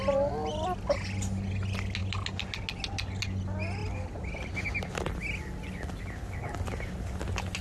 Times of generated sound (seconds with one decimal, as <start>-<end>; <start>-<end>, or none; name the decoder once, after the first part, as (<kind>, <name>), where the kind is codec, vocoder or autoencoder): none